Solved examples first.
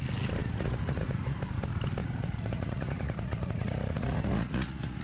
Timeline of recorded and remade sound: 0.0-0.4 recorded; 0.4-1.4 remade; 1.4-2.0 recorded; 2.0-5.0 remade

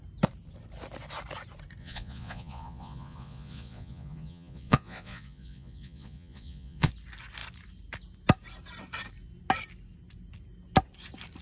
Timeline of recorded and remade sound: 0.0-1.8 recorded; 1.8-6.9 remade; 6.9-11.4 recorded

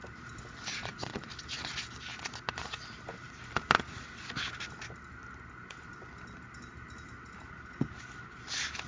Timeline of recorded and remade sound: 0.0-0.7 recorded; 0.7-1.3 remade; 1.3-8.9 recorded

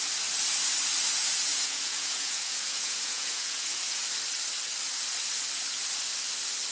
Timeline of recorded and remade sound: 0.0-1.2 recorded; 1.2-4.0 remade; 4.0-6.7 recorded

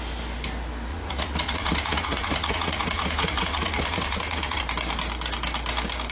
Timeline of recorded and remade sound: 0.0-0.9 recorded; 0.9-4.6 remade; 4.6-6.1 recorded

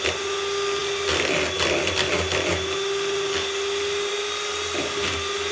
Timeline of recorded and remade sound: 0.0-5.5 recorded

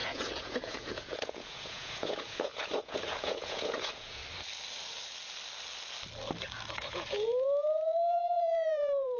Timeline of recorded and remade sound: 0.0-4.2 remade; 4.2-6.7 recorded; 6.7-9.2 remade

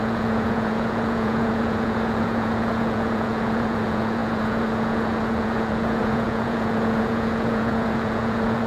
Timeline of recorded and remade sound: 0.0-8.7 remade